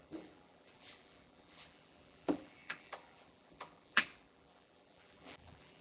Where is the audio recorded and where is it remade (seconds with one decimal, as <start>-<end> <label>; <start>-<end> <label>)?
0.0-5.8 remade